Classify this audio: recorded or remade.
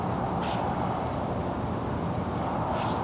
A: recorded